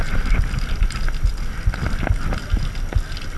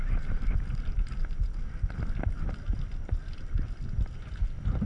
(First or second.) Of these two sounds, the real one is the first